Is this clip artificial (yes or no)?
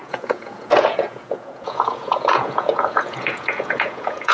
yes